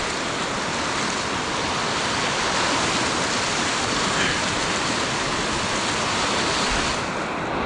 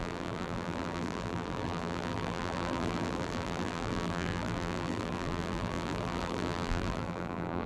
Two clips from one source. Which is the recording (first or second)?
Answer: first